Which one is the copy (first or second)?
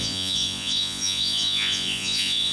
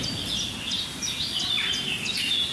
first